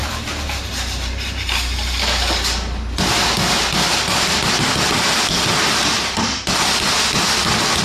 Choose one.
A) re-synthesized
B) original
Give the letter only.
B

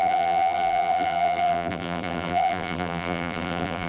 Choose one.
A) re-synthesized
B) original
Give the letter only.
A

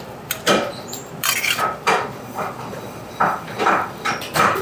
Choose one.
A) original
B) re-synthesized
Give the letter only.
B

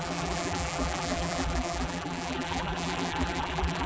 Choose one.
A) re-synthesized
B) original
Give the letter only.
A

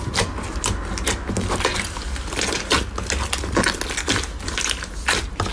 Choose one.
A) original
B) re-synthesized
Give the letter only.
A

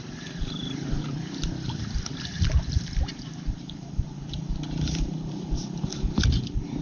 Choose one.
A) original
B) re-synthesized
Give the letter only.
B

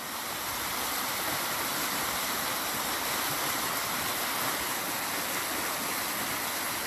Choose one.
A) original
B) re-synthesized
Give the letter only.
A